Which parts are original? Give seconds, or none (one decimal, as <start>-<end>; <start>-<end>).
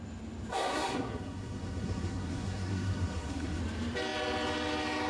0.0-0.5; 3.6-5.1